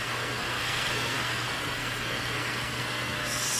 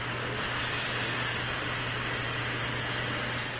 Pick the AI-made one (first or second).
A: first